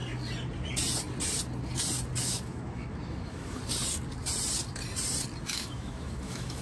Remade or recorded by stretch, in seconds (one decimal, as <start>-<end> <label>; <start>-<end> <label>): 0.0-2.2 recorded; 2.2-3.6 remade; 3.6-5.5 recorded; 5.5-6.6 remade